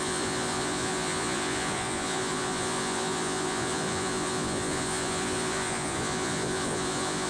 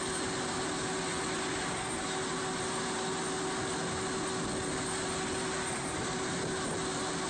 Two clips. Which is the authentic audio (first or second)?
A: second